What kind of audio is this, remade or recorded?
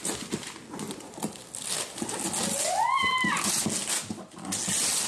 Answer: recorded